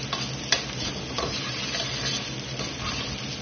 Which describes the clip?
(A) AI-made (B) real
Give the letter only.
B